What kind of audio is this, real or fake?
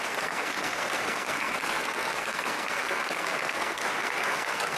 fake